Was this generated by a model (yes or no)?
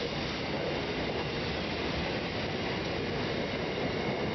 no